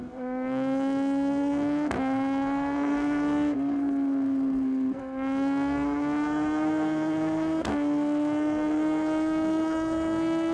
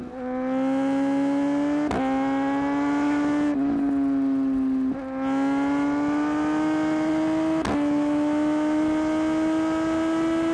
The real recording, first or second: second